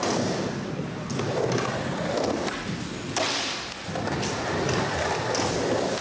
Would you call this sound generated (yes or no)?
no